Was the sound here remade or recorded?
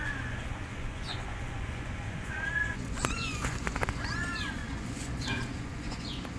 remade